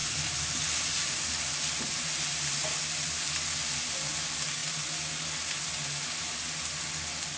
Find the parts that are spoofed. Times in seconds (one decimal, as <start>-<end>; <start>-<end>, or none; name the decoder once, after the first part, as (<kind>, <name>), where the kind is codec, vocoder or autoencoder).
4.6-5.7 (vocoder, BigVGAN v2)

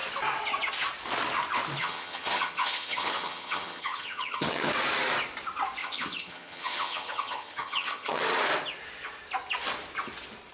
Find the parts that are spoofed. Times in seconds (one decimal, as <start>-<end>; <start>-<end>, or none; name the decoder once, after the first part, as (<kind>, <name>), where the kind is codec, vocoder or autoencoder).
1.8-4.7 (vocoder, HiFi-GAN); 5.8-8.2

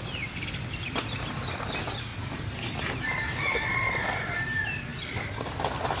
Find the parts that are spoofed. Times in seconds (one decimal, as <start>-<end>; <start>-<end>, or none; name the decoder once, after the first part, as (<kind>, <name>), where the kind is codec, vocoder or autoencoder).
none

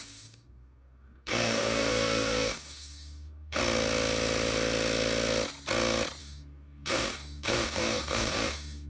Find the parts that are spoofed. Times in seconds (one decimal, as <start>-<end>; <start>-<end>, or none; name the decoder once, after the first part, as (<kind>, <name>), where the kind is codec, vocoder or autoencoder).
0.0-3.6 (codec, DAC); 6.2-8.9

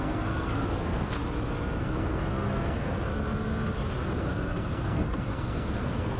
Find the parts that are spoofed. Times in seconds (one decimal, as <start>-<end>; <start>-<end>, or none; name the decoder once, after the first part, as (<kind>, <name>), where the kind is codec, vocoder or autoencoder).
0.0-1.2 (codec, SNAC); 1.8-3.1; 4.2-6.2

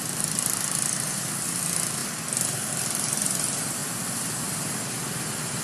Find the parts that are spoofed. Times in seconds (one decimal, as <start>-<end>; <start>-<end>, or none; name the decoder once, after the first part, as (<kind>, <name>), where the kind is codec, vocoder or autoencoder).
3.8-4.9 (vocoder, BigVGAN v2)

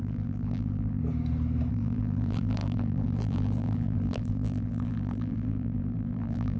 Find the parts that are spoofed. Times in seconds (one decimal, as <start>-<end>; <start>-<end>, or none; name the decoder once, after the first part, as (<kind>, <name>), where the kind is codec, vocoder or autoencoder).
0.0-1.0 (vocoder, BigVGAN v2); 1.7-6.6